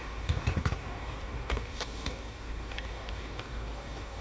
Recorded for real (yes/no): no